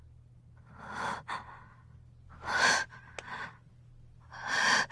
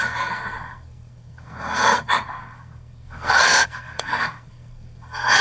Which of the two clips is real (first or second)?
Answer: first